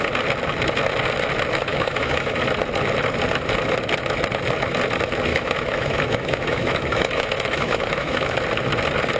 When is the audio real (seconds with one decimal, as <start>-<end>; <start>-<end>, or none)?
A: 0.0-1.7; 2.4-5.3; 8.4-9.2